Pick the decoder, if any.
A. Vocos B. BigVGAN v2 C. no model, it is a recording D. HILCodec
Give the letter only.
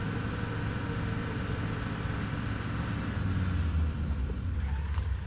C